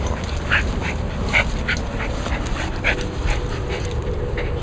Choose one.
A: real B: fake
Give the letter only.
A